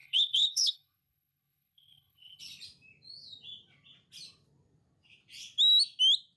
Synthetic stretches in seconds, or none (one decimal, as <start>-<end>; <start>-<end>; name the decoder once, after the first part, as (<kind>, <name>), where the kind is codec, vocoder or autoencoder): 0.0-2.4 (codec, HILCodec)